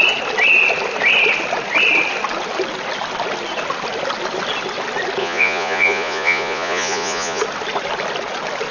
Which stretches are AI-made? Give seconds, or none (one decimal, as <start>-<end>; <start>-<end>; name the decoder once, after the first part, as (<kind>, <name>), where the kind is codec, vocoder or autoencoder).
5.2-7.4 (vocoder, Vocos)